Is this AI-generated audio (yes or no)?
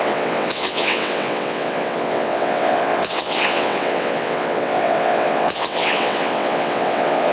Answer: yes